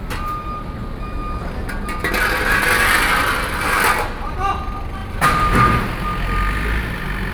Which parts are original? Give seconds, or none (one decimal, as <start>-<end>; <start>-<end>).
0.0-5.0; 5.9-7.3